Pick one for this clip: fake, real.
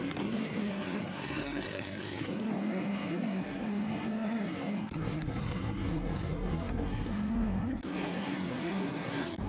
fake